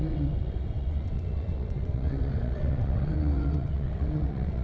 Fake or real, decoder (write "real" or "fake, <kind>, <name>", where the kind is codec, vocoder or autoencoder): fake, vocoder, WaveNeXt